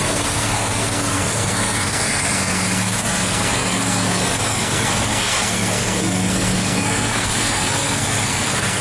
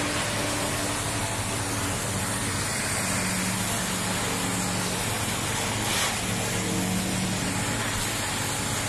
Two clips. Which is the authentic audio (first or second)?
second